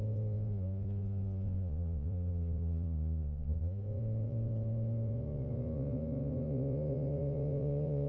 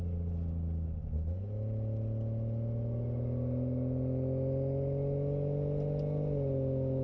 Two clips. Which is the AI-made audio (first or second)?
first